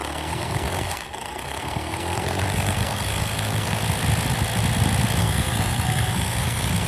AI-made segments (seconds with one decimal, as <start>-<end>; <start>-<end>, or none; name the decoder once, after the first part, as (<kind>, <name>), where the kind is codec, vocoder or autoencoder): 0.0-3.8 (codec, SNAC); 5.2-6.9